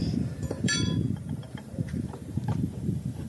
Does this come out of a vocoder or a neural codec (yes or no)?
yes